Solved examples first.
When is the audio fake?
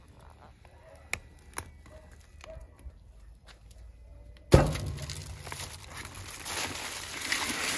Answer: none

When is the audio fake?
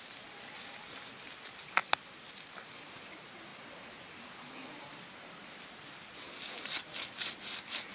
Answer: none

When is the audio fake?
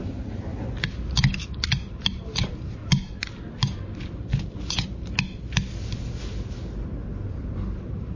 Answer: 0.0-0.5 (vocoder, BigVGAN v2); 1.4-2.8; 7.3-8.2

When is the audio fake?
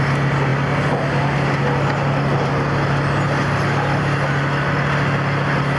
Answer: none